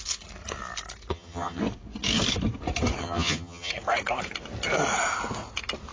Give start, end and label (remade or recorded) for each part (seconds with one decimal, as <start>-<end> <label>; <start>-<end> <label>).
0.0-1.1 recorded; 1.1-1.6 remade; 1.6-3.0 recorded; 3.0-3.7 remade; 3.7-5.9 recorded